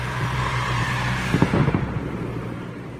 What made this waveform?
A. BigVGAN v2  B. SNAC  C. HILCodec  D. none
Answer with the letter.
A